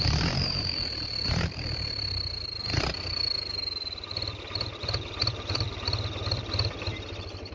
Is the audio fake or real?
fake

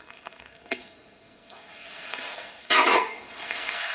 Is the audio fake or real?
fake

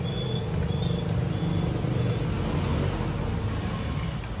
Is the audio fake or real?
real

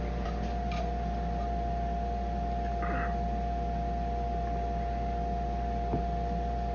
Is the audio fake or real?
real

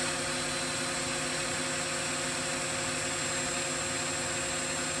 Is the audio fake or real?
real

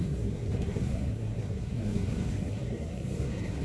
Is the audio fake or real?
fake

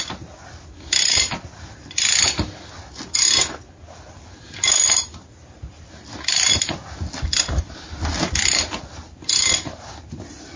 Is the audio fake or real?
real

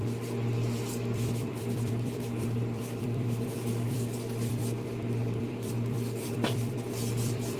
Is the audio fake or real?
fake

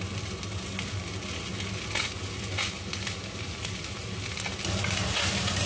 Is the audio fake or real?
real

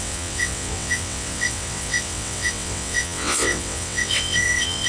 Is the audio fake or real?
fake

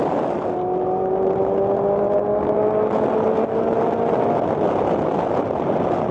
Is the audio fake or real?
real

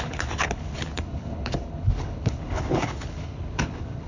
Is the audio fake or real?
fake